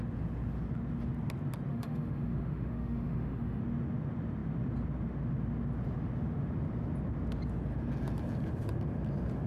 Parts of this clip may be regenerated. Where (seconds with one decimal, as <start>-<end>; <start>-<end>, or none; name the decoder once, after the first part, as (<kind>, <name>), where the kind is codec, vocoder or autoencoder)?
1.7-3.6 (autoencoder, DAC-VAE)

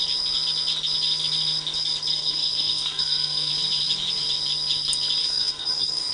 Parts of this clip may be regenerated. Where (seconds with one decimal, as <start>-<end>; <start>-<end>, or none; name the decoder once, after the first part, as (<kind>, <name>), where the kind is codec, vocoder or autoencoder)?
2.1-3.5 (codec, SNAC); 5.2-6.1

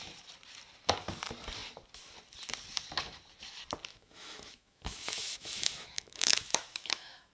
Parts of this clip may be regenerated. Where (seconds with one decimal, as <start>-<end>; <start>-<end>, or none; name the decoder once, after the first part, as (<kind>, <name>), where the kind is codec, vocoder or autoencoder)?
3.9-7.3 (autoencoder, DAC-VAE)